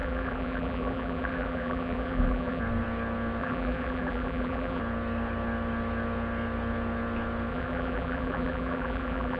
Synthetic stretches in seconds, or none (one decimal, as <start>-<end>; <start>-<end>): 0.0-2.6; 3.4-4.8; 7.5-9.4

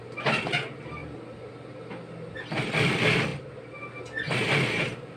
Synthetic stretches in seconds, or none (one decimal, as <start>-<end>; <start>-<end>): 3.3-3.8

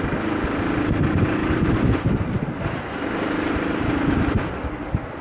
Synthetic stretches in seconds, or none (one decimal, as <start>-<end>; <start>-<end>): none